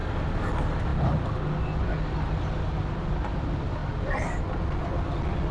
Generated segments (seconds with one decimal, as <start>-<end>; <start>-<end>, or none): 3.8-4.4